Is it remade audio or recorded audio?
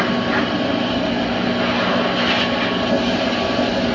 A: recorded